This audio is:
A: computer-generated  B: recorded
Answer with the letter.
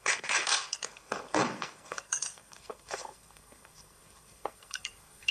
A